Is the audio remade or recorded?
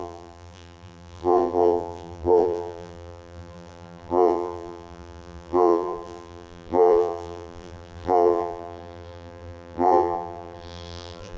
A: remade